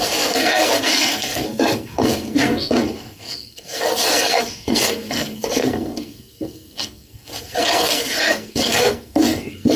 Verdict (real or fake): fake